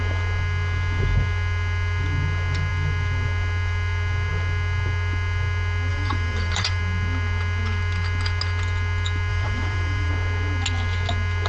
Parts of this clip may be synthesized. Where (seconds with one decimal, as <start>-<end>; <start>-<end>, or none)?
5.9-6.8; 9.3-10.1